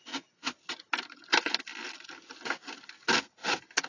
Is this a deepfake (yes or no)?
no